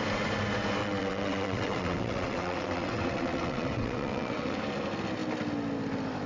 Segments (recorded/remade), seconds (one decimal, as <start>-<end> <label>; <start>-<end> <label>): 0.0-0.8 recorded; 0.8-4.6 remade; 4.6-6.3 recorded